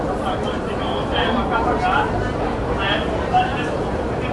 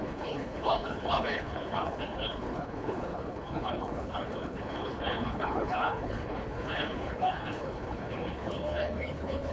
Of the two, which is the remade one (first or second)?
second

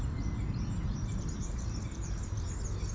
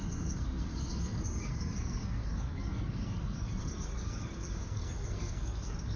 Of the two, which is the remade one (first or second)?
second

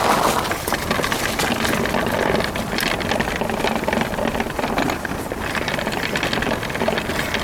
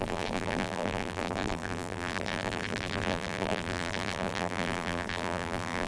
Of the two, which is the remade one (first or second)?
second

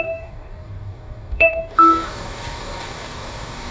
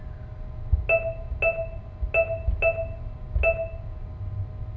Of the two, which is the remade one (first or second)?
first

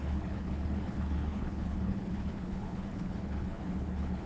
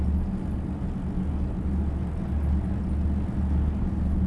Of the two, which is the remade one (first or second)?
first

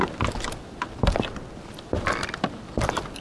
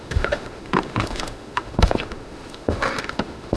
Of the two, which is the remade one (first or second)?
second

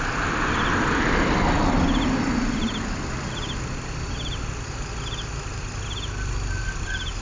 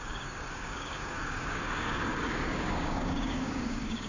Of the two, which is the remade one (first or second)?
second